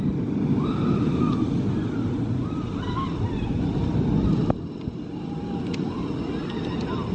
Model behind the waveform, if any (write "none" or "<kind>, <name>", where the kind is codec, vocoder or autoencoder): none